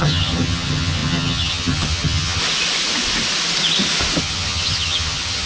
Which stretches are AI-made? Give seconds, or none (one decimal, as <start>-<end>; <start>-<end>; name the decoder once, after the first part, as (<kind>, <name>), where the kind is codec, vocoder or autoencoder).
0.0-2.4 (vocoder, HiFi-GAN); 4.2-5.5